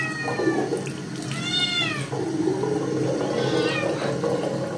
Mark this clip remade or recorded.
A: recorded